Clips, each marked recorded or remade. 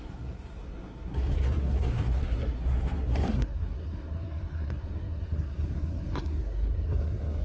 remade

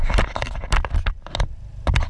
recorded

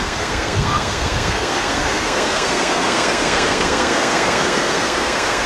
remade